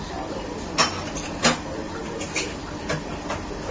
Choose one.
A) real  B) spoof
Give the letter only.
A